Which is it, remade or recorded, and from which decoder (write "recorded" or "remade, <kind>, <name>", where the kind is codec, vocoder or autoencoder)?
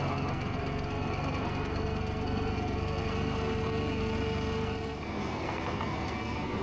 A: remade, codec, SNAC